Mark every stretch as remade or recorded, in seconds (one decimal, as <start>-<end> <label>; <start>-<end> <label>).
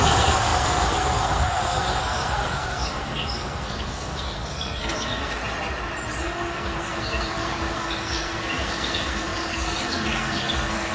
0.0-5.4 remade; 5.4-6.2 recorded; 6.2-10.9 remade